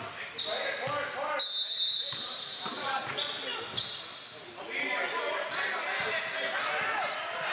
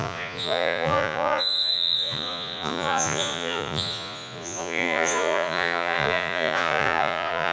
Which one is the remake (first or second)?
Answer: second